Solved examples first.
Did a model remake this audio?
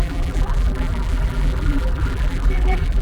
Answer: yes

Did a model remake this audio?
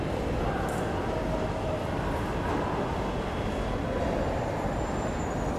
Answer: no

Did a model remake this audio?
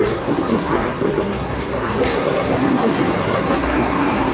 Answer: yes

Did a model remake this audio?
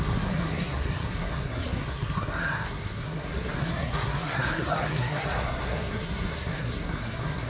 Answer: yes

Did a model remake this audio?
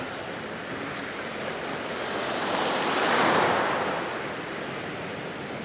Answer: no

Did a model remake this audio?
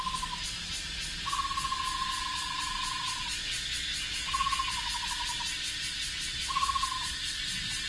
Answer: no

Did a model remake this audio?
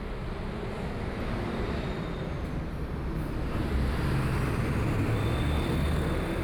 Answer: no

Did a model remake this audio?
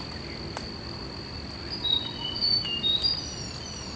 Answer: no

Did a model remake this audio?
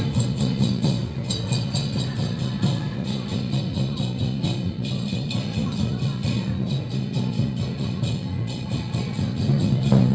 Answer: yes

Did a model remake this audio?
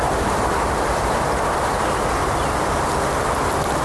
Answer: yes